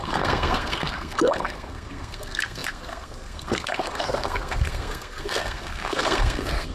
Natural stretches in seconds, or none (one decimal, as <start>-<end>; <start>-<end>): none